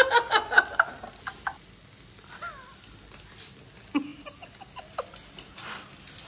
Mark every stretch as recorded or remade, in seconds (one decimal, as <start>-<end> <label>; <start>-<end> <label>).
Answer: 0.0-6.3 recorded